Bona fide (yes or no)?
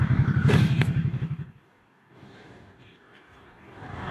no